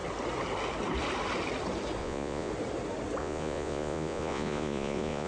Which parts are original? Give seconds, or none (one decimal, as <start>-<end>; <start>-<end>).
0.0-2.0; 2.5-3.2